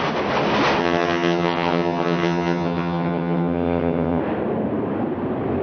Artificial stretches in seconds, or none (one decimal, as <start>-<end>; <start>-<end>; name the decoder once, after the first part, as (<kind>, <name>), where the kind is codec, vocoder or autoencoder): 0.8-4.2 (vocoder, HiFi-GAN)